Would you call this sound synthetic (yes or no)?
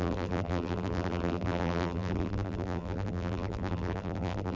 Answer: yes